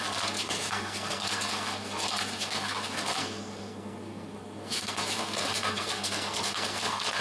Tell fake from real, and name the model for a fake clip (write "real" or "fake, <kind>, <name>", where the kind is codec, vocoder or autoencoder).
fake, codec, SNAC